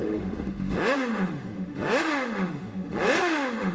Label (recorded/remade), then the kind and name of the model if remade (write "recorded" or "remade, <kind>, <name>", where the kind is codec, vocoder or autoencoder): remade, autoencoder, DAC-VAE